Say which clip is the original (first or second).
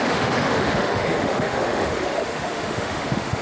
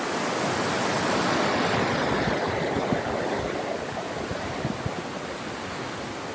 second